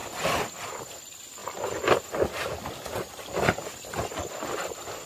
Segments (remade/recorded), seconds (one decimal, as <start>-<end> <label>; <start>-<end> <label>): 0.0-5.1 remade